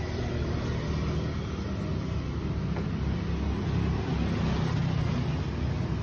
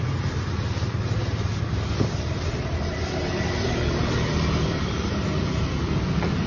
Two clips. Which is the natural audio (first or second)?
first